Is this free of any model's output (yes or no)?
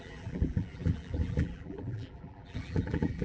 no